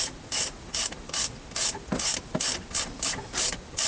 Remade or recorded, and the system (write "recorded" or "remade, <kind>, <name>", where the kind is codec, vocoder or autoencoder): remade, vocoder, BigVGAN v2